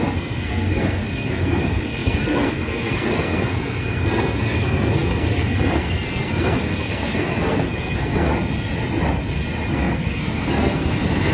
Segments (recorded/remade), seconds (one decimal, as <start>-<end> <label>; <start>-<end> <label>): 0.0-8.3 remade; 8.3-9.7 recorded; 9.7-11.3 remade